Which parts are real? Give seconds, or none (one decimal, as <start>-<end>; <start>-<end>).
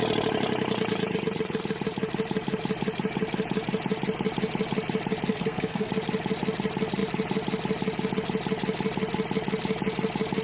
0.0-5.3; 5.9-10.4